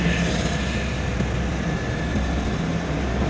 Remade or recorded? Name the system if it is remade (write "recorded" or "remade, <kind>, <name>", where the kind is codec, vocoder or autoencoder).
recorded